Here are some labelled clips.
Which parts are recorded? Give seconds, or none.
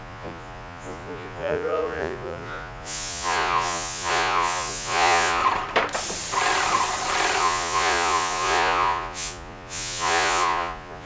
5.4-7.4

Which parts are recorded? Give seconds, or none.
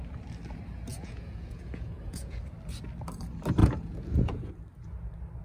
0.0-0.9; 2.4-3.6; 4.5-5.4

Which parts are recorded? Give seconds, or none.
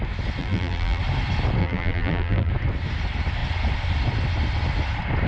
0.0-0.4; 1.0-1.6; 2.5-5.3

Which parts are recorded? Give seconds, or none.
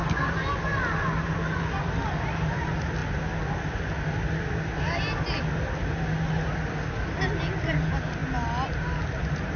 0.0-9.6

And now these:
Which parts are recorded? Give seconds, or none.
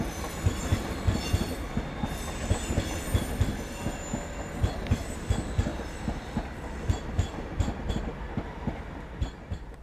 0.0-9.8